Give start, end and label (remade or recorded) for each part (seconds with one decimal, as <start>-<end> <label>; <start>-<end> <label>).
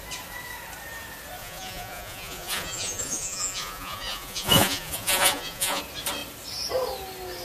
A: 0.0-1.4 recorded; 1.4-5.8 remade; 5.8-7.4 recorded